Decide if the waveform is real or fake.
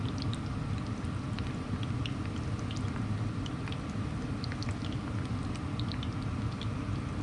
real